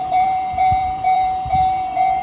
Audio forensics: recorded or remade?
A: remade